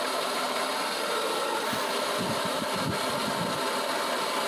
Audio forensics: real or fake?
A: real